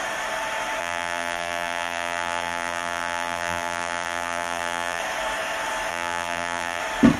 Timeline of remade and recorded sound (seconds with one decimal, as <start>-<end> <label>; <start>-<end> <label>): 0.0-0.8 recorded; 0.8-5.0 remade; 5.0-5.9 recorded; 5.9-6.8 remade; 6.8-7.2 recorded